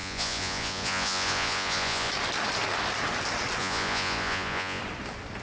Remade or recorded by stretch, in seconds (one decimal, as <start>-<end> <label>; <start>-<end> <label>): 0.0-2.1 remade; 2.1-3.6 recorded; 3.6-4.8 remade; 4.8-5.4 recorded